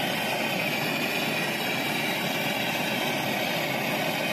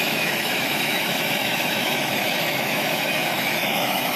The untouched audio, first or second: first